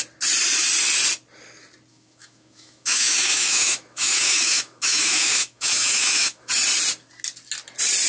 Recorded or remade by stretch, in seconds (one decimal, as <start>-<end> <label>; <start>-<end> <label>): 0.0-1.9 recorded; 1.9-6.5 remade; 6.5-8.1 recorded